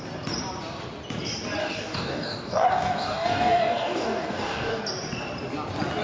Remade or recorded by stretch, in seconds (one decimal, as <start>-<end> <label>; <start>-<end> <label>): 0.0-1.6 recorded; 1.6-4.8 remade; 4.8-6.0 recorded